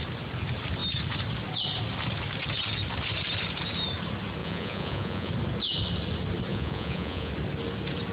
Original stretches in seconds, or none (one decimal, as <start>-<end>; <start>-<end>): 0.0-4.4; 5.3-6.5; 7.3-8.1

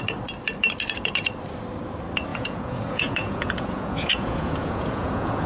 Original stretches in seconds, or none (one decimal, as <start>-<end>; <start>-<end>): 0.0-2.3

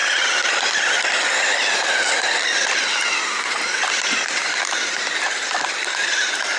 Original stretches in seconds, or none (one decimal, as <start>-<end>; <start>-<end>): 0.0-6.6

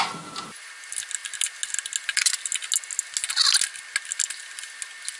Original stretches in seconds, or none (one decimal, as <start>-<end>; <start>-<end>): 0.0-5.2